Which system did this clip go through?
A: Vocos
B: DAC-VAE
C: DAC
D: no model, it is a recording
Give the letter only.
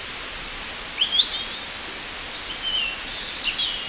D